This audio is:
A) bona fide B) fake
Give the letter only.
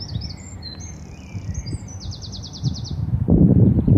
B